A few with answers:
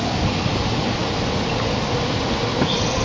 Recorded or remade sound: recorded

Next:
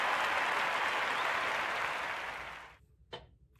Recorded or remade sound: recorded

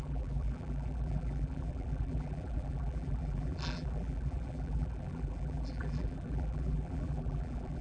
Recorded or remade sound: remade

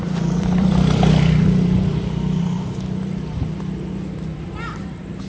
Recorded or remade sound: remade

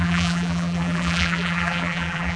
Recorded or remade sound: remade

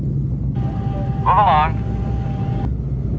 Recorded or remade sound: recorded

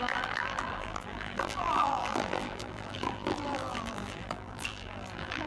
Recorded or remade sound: remade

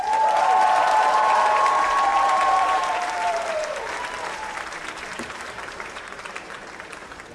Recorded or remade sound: remade